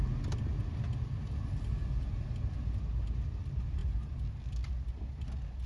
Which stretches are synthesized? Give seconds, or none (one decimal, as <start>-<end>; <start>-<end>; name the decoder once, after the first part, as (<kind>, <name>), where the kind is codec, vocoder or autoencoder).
none